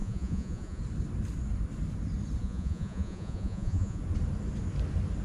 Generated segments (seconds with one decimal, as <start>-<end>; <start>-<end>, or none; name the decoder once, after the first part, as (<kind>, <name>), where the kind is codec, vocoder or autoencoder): 0.0-0.8 (vocoder, Vocos); 2.4-4.0